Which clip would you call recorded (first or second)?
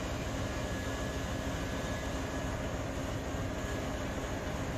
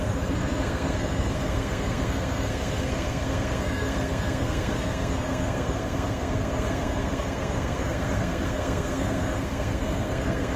first